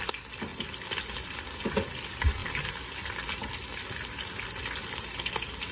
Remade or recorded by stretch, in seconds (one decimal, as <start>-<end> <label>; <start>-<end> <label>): 0.0-5.7 recorded

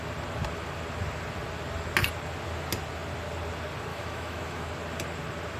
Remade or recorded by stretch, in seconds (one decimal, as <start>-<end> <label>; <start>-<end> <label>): 0.0-3.9 recorded; 3.9-4.7 remade; 4.7-5.6 recorded